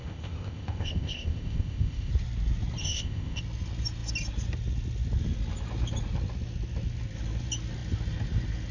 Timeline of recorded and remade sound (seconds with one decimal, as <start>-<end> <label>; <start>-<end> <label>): 0.0-2.1 remade; 2.1-2.8 recorded; 2.8-3.4 remade; 3.4-8.7 recorded